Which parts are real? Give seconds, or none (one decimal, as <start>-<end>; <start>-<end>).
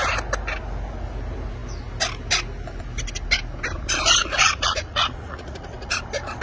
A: 0.0-4.2; 6.0-6.4